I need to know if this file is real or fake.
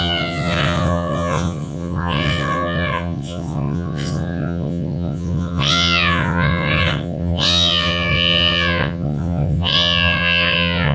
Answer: fake